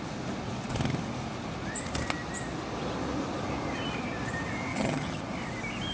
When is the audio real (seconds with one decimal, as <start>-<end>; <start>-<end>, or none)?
0.0-4.7; 5.2-5.9